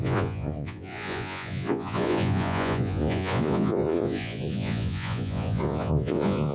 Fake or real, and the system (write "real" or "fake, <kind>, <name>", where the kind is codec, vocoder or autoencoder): fake, vocoder, Vocos